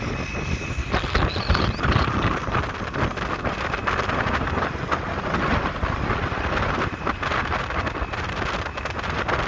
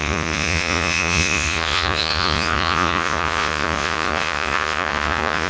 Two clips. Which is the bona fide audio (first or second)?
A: first